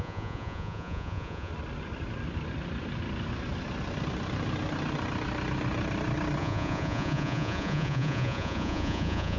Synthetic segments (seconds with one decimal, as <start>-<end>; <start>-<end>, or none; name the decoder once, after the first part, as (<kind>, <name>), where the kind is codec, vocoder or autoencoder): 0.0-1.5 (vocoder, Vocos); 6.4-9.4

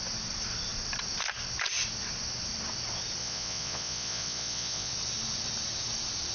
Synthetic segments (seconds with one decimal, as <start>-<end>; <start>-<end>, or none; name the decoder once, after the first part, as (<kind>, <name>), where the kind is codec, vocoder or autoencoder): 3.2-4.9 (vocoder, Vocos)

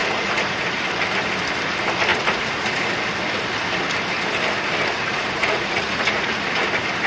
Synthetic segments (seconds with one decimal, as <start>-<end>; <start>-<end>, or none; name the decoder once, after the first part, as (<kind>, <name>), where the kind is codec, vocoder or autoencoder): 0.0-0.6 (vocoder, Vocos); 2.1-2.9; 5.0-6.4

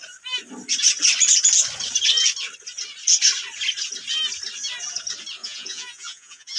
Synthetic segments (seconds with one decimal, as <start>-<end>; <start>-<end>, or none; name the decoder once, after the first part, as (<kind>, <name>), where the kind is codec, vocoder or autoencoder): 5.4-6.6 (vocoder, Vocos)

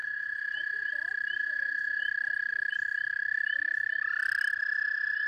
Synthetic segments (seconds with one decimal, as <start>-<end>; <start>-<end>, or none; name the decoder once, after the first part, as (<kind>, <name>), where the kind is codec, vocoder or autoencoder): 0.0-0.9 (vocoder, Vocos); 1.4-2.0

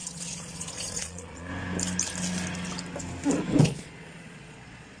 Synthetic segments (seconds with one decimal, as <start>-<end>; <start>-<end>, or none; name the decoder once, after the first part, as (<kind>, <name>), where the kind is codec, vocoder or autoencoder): 0.0-1.5 (vocoder, Vocos); 3.6-5.0